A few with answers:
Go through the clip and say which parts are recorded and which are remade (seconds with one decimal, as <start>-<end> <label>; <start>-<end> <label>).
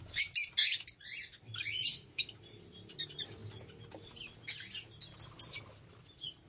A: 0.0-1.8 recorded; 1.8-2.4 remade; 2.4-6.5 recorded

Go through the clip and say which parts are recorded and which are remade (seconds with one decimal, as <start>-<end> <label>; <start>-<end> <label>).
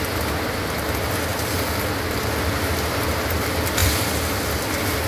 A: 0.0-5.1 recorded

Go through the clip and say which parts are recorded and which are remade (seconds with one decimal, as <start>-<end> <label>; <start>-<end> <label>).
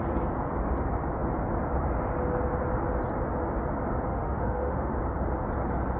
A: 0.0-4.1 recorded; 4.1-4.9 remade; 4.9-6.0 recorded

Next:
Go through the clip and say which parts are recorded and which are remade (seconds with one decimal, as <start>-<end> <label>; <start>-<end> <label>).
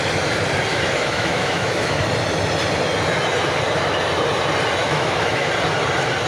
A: 0.0-0.7 recorded; 0.7-2.0 remade; 2.0-4.8 recorded; 4.8-5.5 remade; 5.5-6.3 recorded